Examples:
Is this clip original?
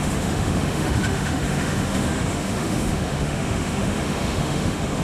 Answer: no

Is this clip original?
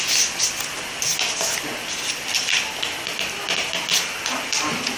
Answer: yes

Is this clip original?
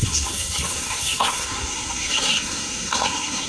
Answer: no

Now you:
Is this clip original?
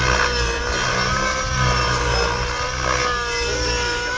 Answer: yes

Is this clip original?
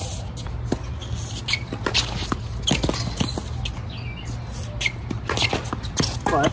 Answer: yes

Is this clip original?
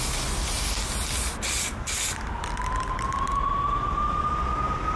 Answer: yes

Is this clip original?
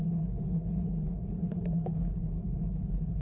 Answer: no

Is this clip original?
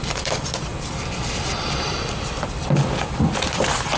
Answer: no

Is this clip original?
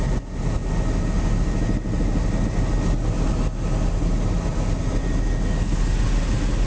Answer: yes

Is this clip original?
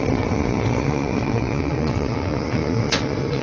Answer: no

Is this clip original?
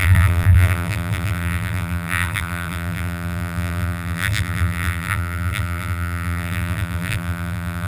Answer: no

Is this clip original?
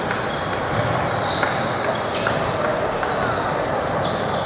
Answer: yes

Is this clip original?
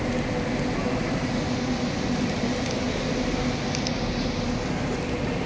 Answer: yes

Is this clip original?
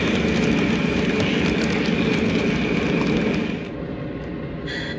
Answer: yes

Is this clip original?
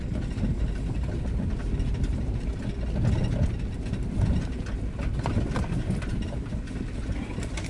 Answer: yes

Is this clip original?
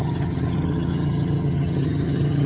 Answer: no